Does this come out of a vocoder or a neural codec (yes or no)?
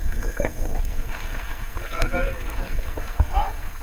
yes